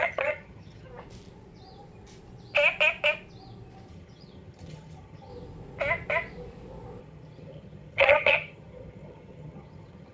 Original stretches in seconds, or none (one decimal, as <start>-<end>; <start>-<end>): 0.9-3.9; 5.3-7.0